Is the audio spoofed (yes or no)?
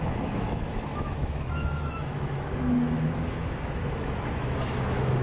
yes